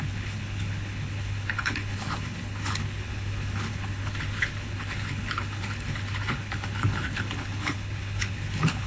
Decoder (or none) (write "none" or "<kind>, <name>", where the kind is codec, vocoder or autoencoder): codec, HILCodec